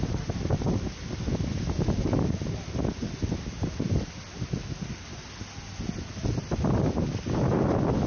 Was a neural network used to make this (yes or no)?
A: no